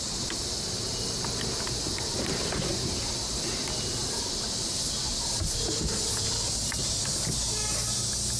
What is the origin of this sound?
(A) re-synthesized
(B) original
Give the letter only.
B